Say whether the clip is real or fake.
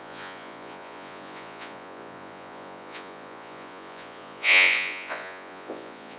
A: fake